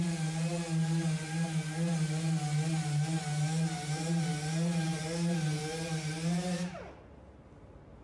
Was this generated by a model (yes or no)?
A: no